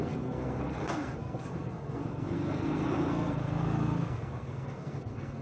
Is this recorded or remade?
remade